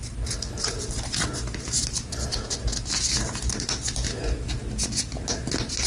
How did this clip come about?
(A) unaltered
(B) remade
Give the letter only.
A